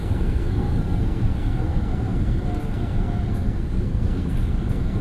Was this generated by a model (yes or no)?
yes